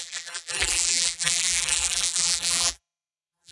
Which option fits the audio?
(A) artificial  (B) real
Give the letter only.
A